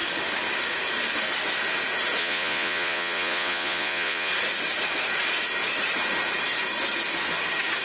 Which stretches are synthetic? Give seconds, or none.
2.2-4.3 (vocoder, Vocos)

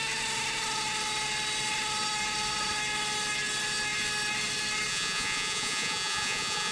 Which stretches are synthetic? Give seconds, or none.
4.9-6.7 (vocoder, Vocos)